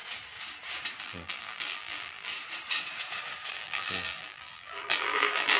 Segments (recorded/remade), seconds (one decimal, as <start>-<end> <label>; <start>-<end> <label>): 0.0-1.0 recorded; 1.0-2.3 remade; 2.3-3.5 recorded; 3.5-5.6 remade